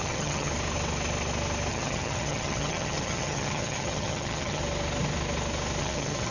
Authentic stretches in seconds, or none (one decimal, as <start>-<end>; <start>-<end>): 0.5-1.7; 4.6-5.8